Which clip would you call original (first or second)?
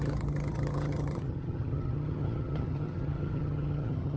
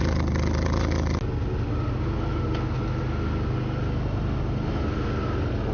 second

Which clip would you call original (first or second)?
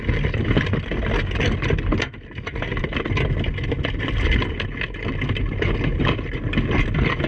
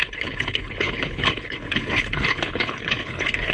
first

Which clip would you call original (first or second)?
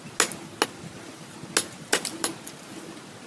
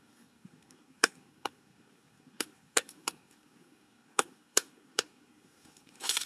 first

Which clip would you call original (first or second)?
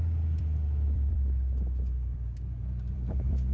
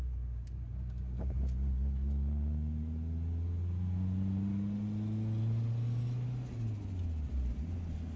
second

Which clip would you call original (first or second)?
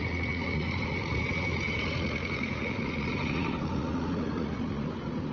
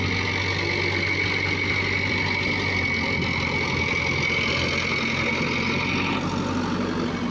second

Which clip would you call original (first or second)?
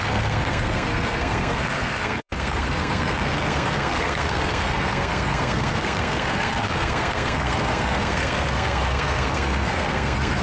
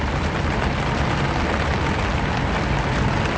second